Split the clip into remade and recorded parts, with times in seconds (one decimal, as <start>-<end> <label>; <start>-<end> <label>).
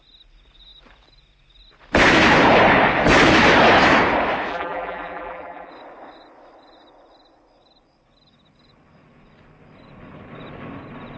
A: 0.0-4.5 recorded; 4.5-5.7 remade; 5.7-11.2 recorded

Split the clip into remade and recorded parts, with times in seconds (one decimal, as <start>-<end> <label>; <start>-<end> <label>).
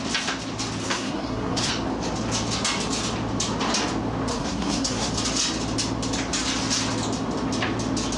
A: 0.0-0.8 recorded; 0.8-1.7 remade; 1.7-4.3 recorded; 4.3-5.1 remade; 5.1-8.2 recorded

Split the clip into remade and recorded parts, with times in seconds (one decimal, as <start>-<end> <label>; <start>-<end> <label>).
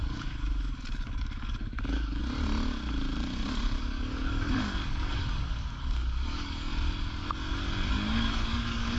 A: 0.0-2.2 remade; 2.2-3.8 recorded; 3.8-6.7 remade; 6.7-7.9 recorded; 7.9-9.0 remade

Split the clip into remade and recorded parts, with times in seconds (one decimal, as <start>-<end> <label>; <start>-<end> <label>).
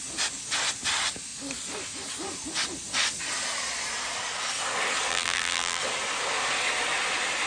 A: 0.0-5.1 recorded; 5.1-5.8 remade; 5.8-7.5 recorded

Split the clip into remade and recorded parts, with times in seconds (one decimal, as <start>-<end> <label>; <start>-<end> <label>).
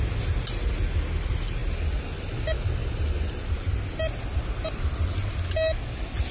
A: 0.0-6.3 recorded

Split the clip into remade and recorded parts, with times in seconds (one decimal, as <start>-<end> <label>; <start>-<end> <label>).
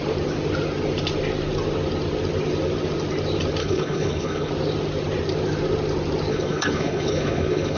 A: 0.0-3.6 recorded; 3.6-4.5 remade; 4.5-6.3 recorded; 6.3-7.8 remade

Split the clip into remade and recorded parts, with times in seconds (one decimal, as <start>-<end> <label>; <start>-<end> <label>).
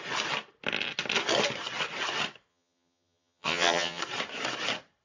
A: 0.0-2.5 recorded; 2.5-4.0 remade; 4.0-5.0 recorded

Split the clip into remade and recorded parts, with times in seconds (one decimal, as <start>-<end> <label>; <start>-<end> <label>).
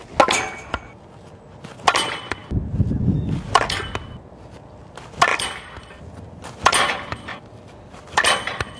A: 0.0-5.3 recorded; 5.3-6.0 remade; 6.0-7.3 recorded; 7.3-8.8 remade